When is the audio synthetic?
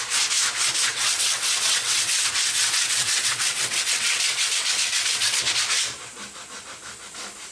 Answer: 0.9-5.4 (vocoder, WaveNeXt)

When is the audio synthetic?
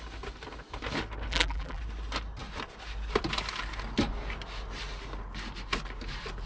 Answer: 1.3-1.8 (vocoder, BigVGAN v2)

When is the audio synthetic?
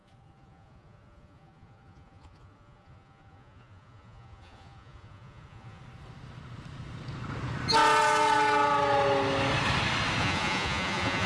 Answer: 0.0-5.8 (vocoder, Vocos); 10.2-11.3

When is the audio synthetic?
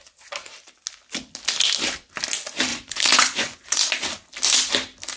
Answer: 2.7-3.8 (vocoder, Vocos)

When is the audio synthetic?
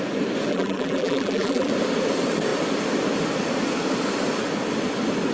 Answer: 0.5-1.7 (vocoder, BigVGAN v2)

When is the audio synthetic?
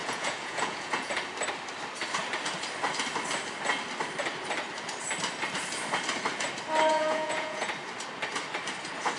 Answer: 0.0-1.1 (vocoder, Vocos); 6.9-7.7